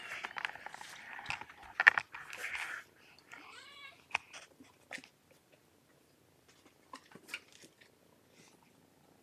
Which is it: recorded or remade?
recorded